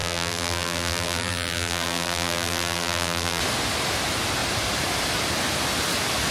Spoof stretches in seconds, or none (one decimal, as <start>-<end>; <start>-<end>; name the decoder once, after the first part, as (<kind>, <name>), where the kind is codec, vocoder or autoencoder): 0.0-3.4 (vocoder, BigVGAN v2)